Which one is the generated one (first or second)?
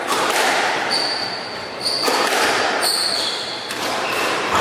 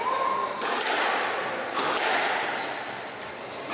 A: first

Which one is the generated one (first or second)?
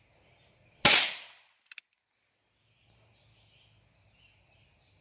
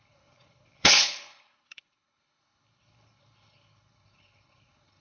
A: second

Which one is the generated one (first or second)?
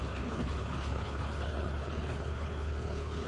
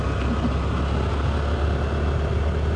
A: first